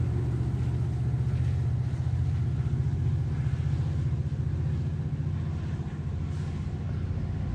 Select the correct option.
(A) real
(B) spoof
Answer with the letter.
A